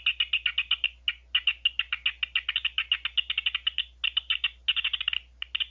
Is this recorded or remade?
recorded